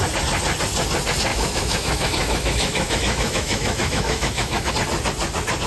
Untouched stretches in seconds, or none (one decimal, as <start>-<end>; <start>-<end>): 0.0-1.3; 4.7-5.7